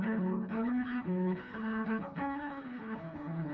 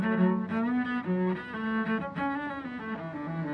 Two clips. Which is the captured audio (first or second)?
second